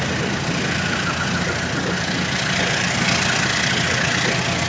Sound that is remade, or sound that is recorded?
recorded